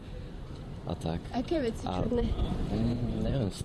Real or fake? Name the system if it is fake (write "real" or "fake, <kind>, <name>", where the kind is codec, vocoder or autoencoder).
fake, vocoder, BigVGAN v2